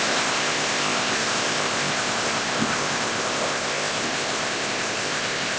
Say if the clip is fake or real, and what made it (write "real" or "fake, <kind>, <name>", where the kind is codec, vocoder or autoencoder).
fake, codec, ZipCodec